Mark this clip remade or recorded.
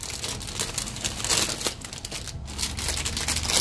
recorded